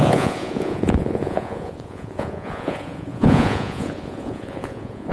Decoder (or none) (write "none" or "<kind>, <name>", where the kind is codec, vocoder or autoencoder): vocoder, Vocos